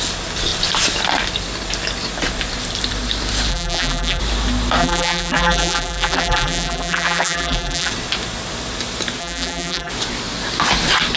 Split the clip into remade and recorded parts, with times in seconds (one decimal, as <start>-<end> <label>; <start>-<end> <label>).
0.0-3.5 recorded; 3.5-4.2 remade; 4.2-4.8 recorded; 4.8-7.9 remade; 7.9-9.2 recorded; 9.2-9.9 remade; 9.9-11.2 recorded